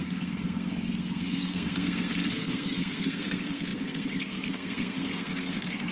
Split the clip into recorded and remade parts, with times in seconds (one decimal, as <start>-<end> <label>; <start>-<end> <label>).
0.0-5.9 remade